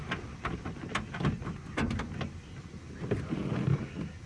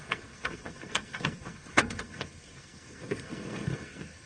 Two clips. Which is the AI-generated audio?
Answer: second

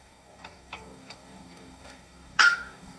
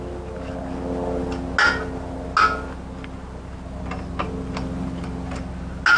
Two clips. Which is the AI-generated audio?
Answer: first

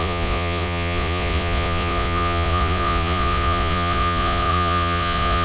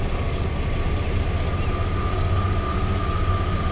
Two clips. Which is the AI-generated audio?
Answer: first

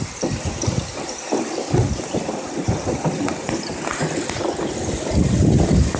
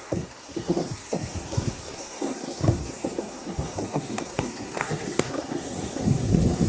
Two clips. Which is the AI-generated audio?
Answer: second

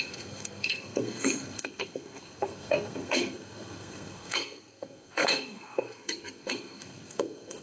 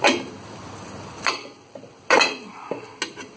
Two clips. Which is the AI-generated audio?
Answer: first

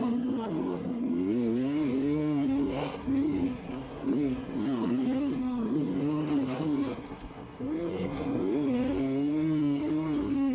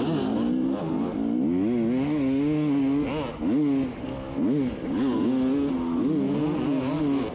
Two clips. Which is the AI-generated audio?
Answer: first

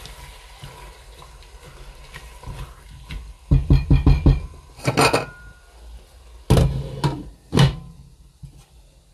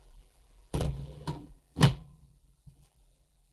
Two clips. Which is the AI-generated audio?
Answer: second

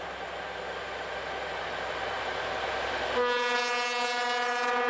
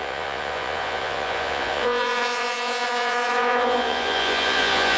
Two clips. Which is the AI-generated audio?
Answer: second